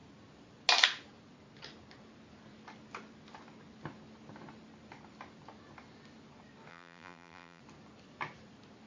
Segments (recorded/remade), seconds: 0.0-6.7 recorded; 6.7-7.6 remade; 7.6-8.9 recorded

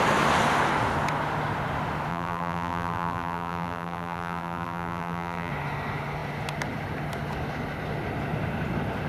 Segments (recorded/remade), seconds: 0.0-2.1 recorded; 2.1-5.5 remade; 5.5-9.1 recorded

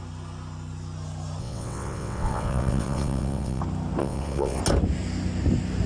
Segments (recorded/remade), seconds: 0.0-1.4 recorded; 1.4-3.6 remade; 3.6-4.0 recorded; 4.0-4.6 remade; 4.6-5.9 recorded

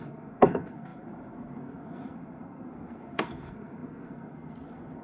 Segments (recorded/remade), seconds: 0.0-5.0 remade

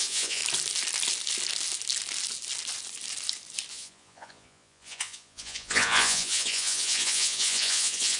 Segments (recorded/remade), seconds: 0.0-0.4 remade; 0.4-3.7 recorded; 3.7-8.2 remade

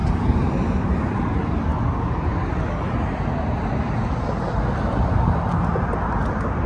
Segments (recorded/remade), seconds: 0.0-0.5 remade; 0.5-6.7 recorded

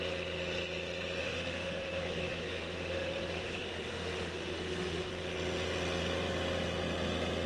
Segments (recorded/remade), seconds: 0.0-1.2 recorded; 1.2-5.1 remade; 5.1-7.5 recorded

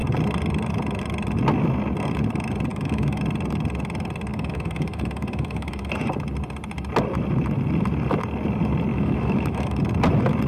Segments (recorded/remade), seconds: 0.0-2.7 recorded; 2.7-3.2 remade; 3.2-4.3 recorded; 4.3-5.9 remade; 5.9-8.9 recorded; 8.9-9.8 remade; 9.8-10.5 recorded